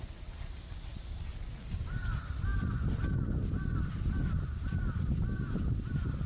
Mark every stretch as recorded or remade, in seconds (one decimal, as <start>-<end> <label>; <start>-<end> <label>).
0.0-6.3 recorded